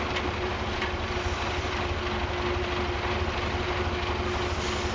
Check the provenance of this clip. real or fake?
real